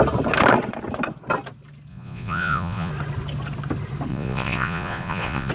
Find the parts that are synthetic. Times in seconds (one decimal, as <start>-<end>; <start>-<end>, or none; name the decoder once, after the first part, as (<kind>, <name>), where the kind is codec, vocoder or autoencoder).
1.9-2.9 (vocoder, Vocos); 4.1-5.5